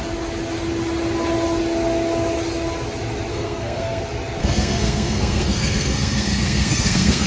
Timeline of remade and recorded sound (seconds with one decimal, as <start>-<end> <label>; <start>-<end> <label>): 0.0-3.3 recorded; 3.3-4.0 remade; 4.0-4.4 recorded; 4.4-7.3 remade